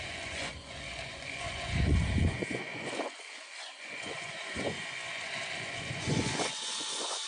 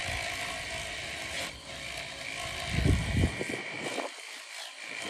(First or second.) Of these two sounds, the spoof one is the first